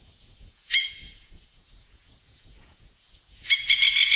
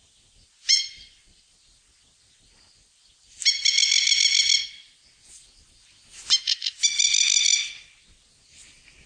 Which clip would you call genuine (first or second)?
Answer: second